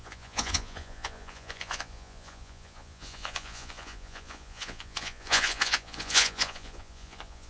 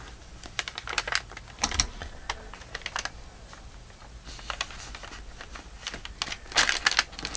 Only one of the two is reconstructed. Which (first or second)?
first